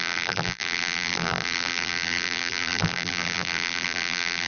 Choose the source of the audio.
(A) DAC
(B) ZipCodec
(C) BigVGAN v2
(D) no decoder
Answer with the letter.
C